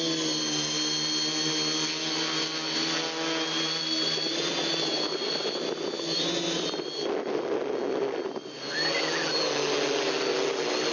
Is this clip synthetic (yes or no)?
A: no